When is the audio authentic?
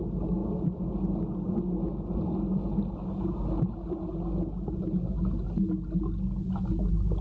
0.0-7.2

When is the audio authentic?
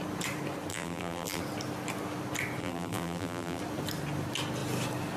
0.0-0.7; 1.4-2.6; 3.6-5.2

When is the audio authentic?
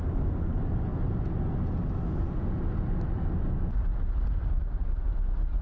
0.0-5.6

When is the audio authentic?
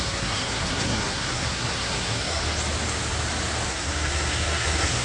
2.4-3.7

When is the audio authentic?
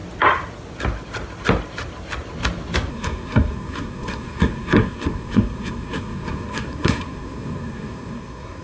0.0-2.9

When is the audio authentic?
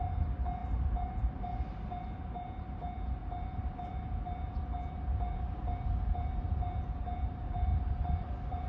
0.0-7.7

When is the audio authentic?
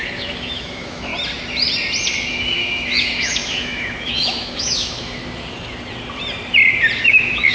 1.1-2.3; 5.2-7.0